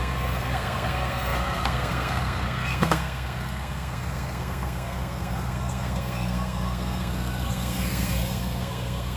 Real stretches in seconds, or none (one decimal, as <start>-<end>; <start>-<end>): none